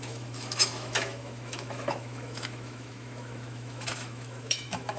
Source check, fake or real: fake